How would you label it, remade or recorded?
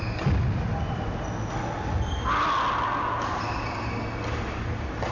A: recorded